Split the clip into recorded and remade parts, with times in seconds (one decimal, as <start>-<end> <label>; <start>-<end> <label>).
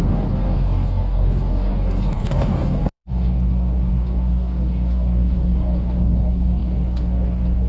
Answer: 0.0-7.7 remade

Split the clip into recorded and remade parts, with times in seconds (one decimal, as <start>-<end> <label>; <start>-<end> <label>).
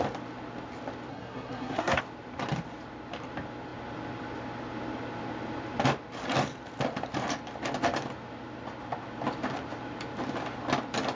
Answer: 0.0-1.1 recorded; 1.1-2.0 remade; 2.0-11.1 recorded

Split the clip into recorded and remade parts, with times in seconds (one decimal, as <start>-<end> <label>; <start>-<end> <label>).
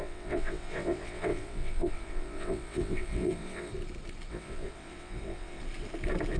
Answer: 0.0-3.7 remade; 3.7-4.3 recorded; 4.3-5.6 remade; 5.6-6.4 recorded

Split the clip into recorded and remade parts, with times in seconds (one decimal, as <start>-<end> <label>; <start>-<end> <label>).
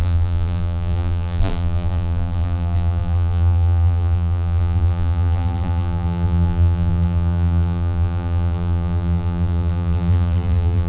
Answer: 0.0-10.9 remade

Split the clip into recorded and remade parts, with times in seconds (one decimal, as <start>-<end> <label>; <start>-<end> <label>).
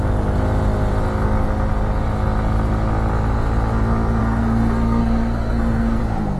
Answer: 0.0-4.2 recorded; 4.2-6.0 remade; 6.0-6.4 recorded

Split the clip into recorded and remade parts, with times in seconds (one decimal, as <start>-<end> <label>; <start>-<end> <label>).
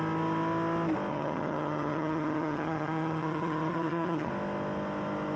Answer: 0.0-1.1 recorded; 1.1-4.3 remade; 4.3-5.4 recorded